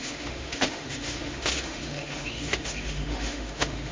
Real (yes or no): no